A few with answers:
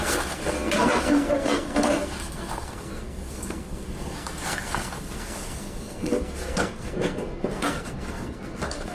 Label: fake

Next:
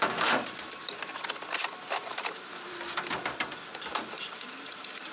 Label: real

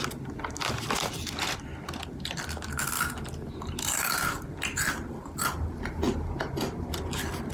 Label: real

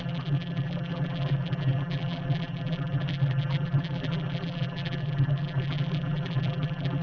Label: fake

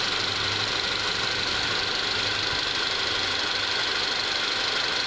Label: real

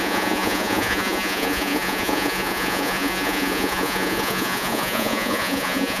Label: fake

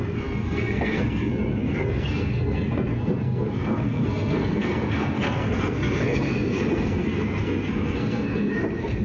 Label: fake